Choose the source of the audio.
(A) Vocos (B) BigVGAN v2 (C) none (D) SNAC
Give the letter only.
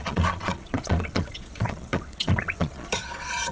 A